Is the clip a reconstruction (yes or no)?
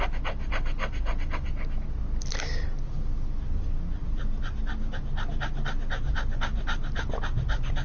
no